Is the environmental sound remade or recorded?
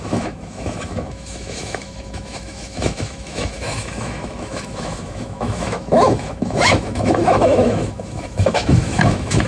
remade